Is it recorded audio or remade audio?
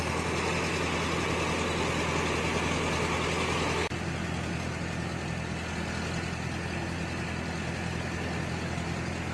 recorded